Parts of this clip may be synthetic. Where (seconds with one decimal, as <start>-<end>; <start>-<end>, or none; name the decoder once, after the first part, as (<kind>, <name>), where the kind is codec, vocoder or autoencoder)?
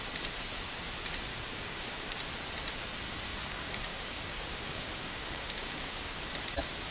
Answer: 1.3-2.2 (codec, DAC); 3.3-6.2